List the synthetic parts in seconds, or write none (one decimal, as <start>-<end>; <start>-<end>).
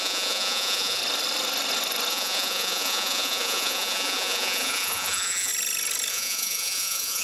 0.0-1.0; 2.1-5.5; 6.1-7.2